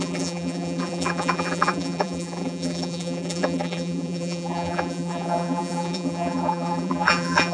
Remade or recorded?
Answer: remade